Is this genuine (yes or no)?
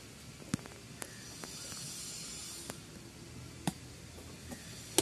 yes